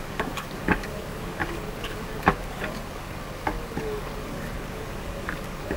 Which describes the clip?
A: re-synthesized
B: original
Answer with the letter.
A